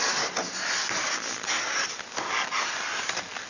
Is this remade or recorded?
recorded